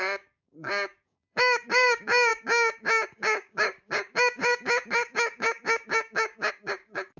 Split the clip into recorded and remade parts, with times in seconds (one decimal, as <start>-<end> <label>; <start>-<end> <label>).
0.0-7.2 remade